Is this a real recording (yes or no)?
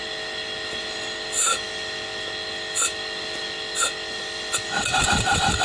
yes